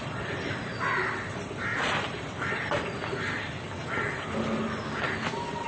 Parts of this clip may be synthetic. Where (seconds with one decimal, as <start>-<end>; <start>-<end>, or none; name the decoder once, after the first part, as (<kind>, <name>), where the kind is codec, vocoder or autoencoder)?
none